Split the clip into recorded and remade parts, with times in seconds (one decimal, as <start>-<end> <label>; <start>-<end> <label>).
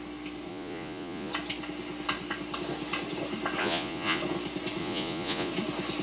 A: 0.0-0.5 recorded; 0.5-1.3 remade; 1.3-3.6 recorded; 3.6-4.2 remade; 4.2-4.8 recorded; 4.8-5.5 remade; 5.5-6.0 recorded